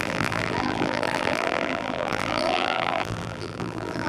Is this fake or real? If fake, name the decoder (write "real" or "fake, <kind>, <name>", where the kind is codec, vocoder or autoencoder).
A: fake, vocoder, BigVGAN v2